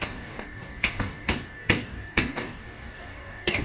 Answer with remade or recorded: remade